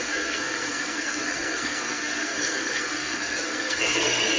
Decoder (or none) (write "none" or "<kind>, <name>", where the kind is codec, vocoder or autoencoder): codec, SNAC